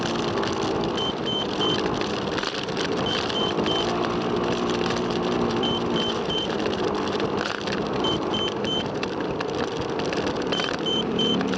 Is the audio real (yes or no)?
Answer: no